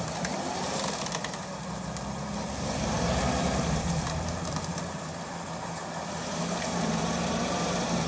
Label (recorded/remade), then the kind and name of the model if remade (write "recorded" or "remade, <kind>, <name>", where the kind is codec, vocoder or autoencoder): remade, vocoder, BigVGAN v2